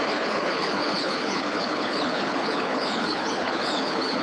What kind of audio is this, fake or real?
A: fake